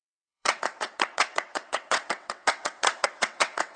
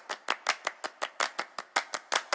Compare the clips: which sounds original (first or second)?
second